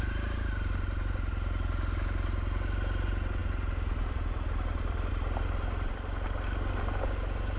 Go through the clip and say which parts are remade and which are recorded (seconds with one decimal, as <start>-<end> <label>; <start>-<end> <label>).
0.0-7.6 recorded